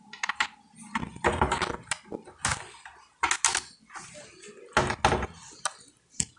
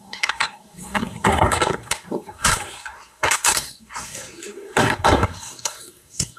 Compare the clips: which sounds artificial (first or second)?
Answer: second